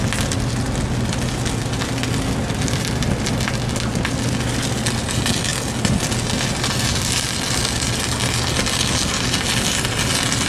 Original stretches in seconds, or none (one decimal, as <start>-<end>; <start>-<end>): 0.0-10.5